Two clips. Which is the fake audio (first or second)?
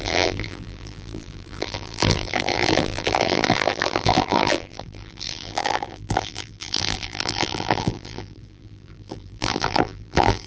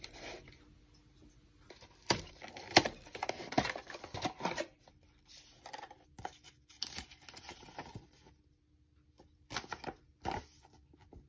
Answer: first